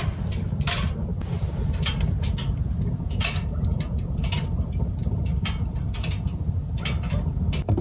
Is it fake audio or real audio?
real